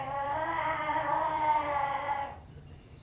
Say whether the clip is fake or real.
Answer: fake